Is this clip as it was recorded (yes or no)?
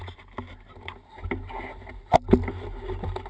yes